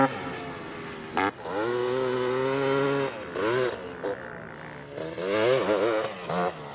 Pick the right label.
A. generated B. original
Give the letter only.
B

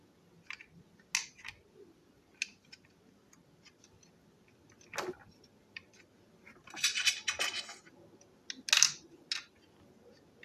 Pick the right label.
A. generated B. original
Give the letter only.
B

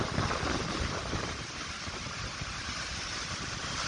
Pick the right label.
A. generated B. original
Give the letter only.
B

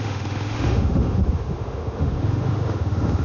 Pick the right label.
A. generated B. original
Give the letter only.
A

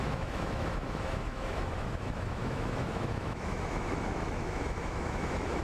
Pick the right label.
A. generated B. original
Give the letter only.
A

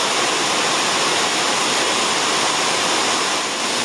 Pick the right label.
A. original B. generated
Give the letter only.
A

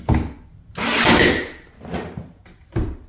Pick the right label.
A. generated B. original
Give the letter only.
B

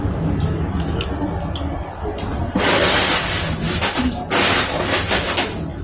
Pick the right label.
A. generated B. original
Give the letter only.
B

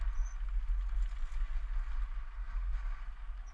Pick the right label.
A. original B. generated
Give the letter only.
A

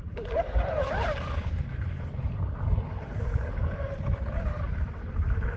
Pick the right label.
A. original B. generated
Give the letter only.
B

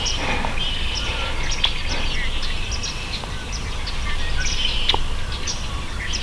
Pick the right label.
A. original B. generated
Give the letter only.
A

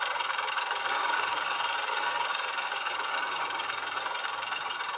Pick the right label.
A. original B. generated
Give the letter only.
B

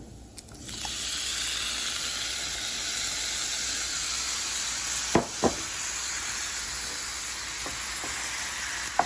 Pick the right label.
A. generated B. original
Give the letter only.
B